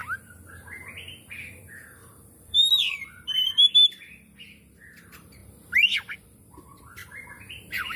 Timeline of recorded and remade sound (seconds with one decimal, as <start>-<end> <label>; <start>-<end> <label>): 0.0-1.2 recorded; 1.2-7.0 remade; 7.0-7.6 recorded; 7.6-8.0 remade

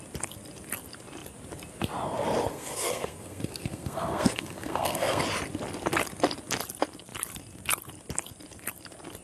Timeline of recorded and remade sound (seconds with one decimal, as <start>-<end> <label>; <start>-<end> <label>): 0.0-2.5 recorded; 2.5-5.2 remade; 5.2-9.2 recorded

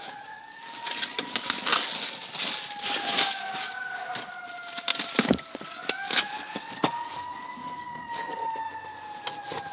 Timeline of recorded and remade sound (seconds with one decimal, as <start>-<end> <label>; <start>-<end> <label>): 0.0-1.7 remade; 1.7-2.8 recorded; 2.8-3.9 remade; 3.9-5.2 recorded; 5.2-8.4 remade; 8.4-9.7 recorded

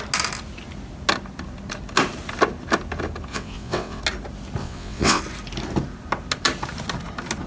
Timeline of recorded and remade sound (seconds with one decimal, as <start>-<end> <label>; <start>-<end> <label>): 0.0-3.3 recorded; 3.3-4.0 remade; 4.0-4.6 recorded; 4.6-5.2 remade; 5.2-7.5 recorded